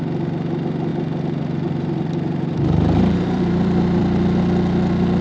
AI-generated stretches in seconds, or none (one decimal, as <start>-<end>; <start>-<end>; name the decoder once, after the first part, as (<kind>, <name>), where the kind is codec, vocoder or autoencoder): 0.9-4.0 (vocoder, BigVGAN v2)